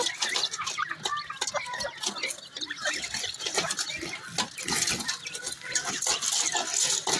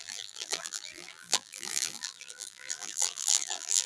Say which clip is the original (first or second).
first